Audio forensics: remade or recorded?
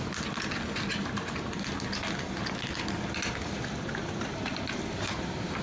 recorded